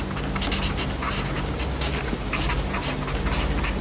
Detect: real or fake real